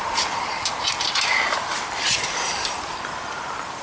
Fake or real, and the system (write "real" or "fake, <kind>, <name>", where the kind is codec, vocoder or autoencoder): real